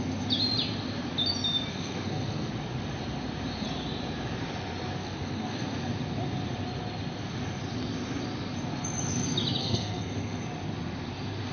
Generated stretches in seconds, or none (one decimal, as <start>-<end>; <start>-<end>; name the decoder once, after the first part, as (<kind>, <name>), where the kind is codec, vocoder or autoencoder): 1.7-2.5 (codec, SNAC); 5.0-5.9; 9.6-10.4